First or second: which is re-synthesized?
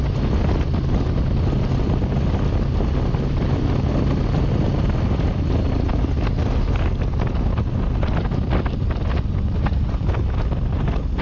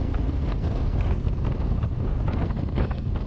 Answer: second